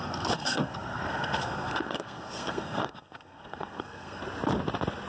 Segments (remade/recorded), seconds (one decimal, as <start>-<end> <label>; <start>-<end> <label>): 0.0-4.2 remade; 4.2-5.1 recorded